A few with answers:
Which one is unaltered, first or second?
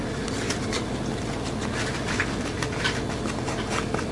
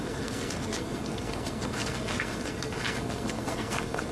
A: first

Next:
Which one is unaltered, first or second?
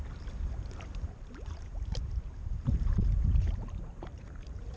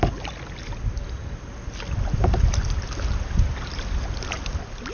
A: second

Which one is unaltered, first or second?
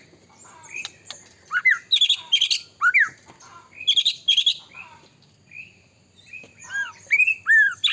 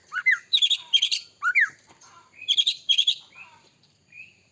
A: first